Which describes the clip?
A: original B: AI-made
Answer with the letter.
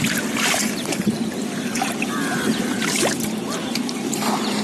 A